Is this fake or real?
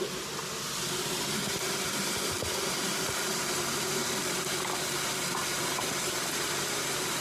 real